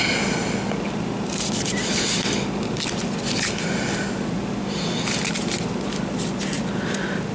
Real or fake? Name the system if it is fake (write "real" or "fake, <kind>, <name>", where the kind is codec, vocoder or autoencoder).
real